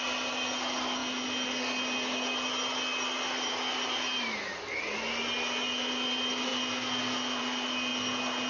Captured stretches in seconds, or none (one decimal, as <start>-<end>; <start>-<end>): 1.0-2.9; 6.5-7.4; 7.9-8.5